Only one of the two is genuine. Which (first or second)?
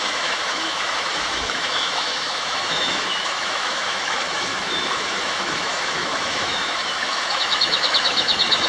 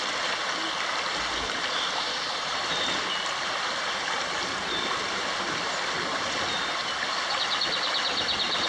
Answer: second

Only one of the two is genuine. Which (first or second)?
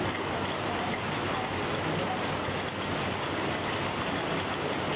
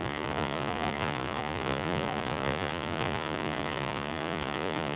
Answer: first